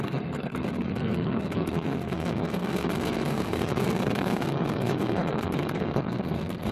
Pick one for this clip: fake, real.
fake